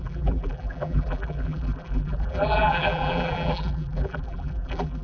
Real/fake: fake